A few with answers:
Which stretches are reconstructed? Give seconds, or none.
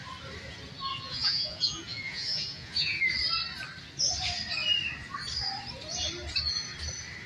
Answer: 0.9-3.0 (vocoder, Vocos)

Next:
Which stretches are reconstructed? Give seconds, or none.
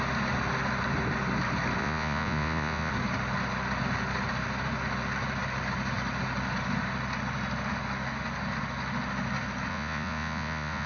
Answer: 1.8-2.9 (vocoder, Vocos); 9.7-10.9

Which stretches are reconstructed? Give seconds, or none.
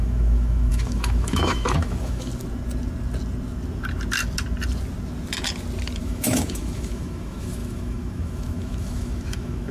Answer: 0.0-2.3 (autoencoder, DAC-VAE); 6.0-9.7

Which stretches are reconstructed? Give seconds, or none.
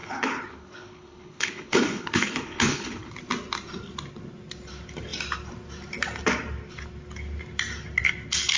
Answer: 0.0-3.1 (codec, HILCodec)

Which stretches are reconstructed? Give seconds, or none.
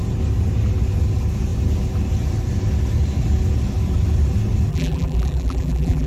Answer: 4.7-6.1 (vocoder, BigVGAN v2)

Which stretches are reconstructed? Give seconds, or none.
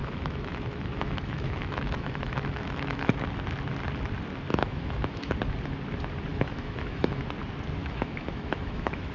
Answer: 0.0-3.2 (autoencoder, DAC-VAE); 4.5-5.3; 6.3-7.2; 7.8-9.1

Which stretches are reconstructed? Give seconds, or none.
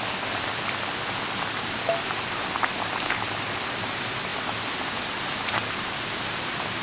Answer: none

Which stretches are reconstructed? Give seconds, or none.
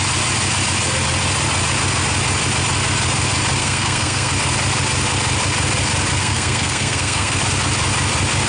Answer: 3.6-4.3 (codec, SNAC); 6.2-7.4